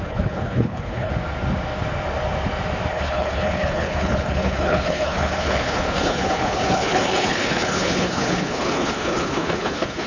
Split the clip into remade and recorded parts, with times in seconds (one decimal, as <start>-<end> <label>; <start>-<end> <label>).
0.0-1.1 remade; 1.1-2.9 recorded; 2.9-10.1 remade